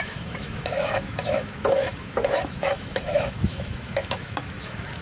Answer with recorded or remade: remade